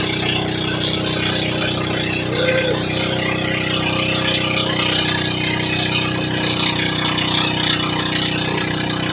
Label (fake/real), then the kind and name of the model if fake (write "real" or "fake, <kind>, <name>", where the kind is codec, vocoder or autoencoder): real